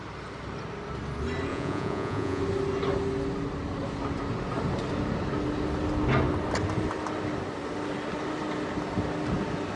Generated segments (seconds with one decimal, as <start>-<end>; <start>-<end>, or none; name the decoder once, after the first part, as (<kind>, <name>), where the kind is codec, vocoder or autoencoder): 1.5-2.4 (vocoder, Vocos)